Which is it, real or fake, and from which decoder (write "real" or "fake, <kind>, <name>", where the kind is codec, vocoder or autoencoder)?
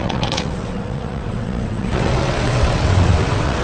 fake, vocoder, WaveNeXt